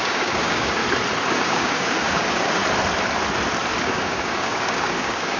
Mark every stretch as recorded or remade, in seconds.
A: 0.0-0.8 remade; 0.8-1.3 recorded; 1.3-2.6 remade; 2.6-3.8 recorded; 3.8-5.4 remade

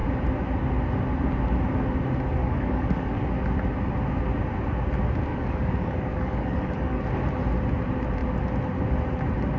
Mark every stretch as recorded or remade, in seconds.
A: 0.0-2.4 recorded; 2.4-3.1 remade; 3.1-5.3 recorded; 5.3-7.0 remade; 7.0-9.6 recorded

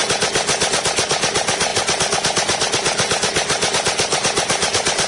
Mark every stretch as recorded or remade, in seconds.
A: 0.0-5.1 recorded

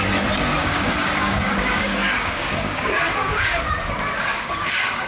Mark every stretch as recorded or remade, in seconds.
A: 0.0-0.6 recorded; 0.6-3.7 remade; 3.7-4.2 recorded; 4.2-5.1 remade

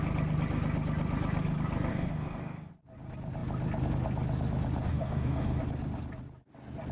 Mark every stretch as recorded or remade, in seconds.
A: 0.0-1.9 recorded; 1.9-2.7 remade; 2.7-4.9 recorded; 4.9-5.6 remade; 5.6-6.9 recorded

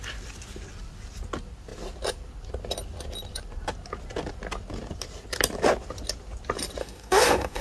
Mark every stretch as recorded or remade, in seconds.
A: 0.0-6.8 recorded; 6.8-7.6 remade